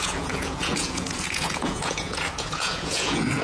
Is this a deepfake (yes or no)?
yes